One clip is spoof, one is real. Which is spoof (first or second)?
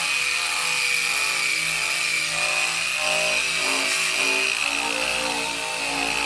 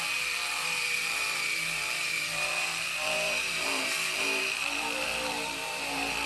second